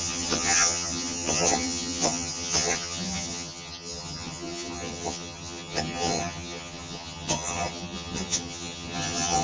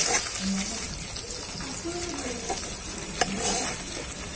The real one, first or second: second